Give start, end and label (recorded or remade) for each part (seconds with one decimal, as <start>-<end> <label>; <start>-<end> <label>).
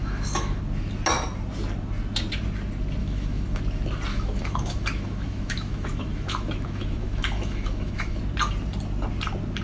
0.0-0.6 remade; 0.6-3.0 recorded; 3.0-3.6 remade; 3.6-4.1 recorded; 4.1-8.2 remade; 8.2-9.6 recorded